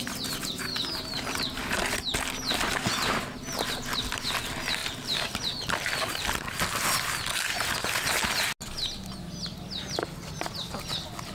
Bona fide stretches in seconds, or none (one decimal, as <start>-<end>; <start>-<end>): 0.0-4.8; 5.9-11.3